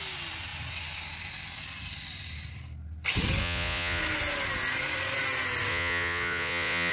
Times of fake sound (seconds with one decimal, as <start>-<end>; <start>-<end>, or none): 3.4-4.0; 5.7-6.9